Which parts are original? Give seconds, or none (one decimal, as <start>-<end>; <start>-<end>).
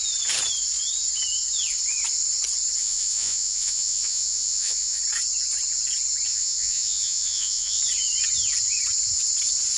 0.0-2.8; 5.0-6.3; 7.8-9.8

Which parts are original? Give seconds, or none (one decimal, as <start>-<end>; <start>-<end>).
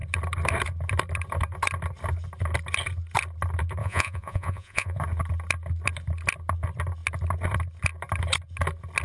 0.0-3.8; 5.0-9.0